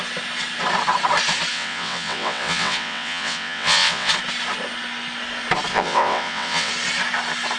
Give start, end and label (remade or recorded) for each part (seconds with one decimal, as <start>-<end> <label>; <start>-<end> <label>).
0.0-1.5 recorded; 1.5-4.1 remade; 4.1-5.7 recorded; 5.7-6.7 remade; 6.7-7.6 recorded